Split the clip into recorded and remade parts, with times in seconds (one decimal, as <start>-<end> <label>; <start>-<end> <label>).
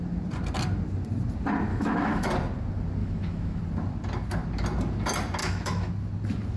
0.0-1.7 recorded; 1.7-2.3 remade; 2.3-3.0 recorded; 3.0-3.6 remade; 3.6-5.4 recorded; 5.4-5.9 remade; 5.9-6.6 recorded